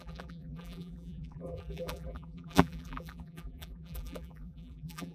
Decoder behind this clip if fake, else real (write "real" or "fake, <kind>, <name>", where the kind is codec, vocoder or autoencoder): fake, vocoder, BigVGAN v2